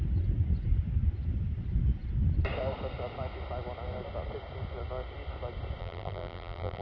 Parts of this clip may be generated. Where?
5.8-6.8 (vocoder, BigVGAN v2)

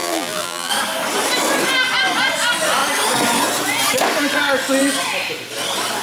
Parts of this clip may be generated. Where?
0.0-0.7 (vocoder, BigVGAN v2)

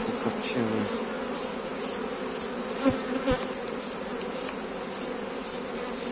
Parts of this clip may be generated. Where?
none

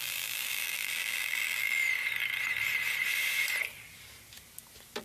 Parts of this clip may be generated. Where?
0.0-1.8 (vocoder, BigVGAN v2)

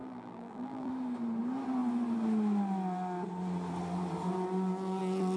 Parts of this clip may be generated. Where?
0.0-0.9 (vocoder, BigVGAN v2)

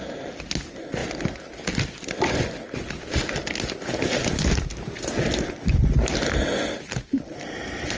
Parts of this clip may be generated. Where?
none